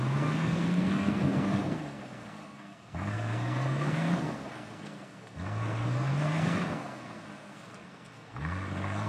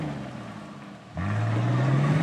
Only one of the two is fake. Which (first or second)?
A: first